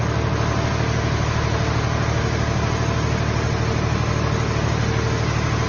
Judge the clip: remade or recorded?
recorded